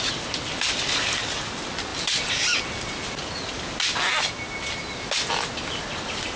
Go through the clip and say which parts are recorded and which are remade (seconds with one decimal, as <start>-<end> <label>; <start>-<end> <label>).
0.0-6.4 recorded